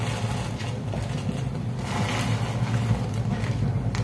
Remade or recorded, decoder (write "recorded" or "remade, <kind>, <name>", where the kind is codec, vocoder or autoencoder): recorded